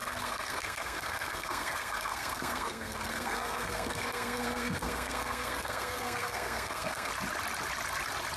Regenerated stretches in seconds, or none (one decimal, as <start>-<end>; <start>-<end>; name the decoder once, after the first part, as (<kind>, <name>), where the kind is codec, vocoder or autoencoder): 0.0-7.1 (codec, SNAC)